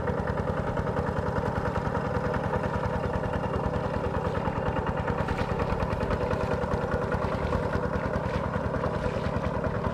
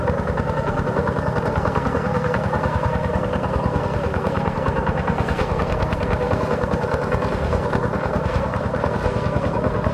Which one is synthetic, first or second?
second